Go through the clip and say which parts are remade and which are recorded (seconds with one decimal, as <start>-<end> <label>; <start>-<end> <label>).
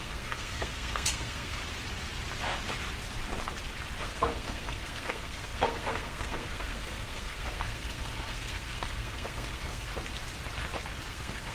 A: 0.0-1.6 remade; 1.6-4.0 recorded; 4.0-9.9 remade; 9.9-11.1 recorded; 11.1-11.5 remade